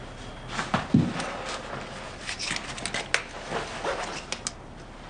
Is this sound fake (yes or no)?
no